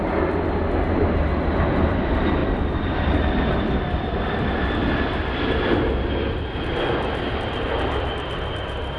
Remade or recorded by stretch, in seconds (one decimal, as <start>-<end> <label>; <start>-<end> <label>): 0.0-9.0 recorded